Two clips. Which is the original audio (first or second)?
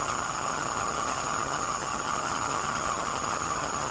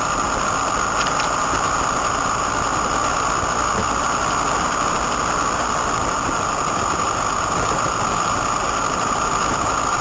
second